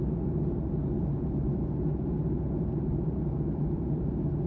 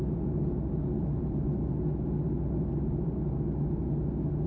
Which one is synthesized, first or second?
first